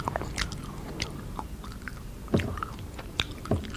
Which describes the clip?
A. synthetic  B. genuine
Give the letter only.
A